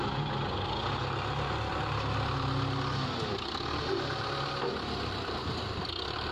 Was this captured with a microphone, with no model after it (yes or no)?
yes